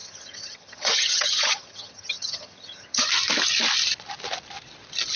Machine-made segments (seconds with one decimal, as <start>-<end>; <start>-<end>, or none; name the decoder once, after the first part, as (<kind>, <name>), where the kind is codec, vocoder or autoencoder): 0.0-3.1 (vocoder, HiFi-GAN)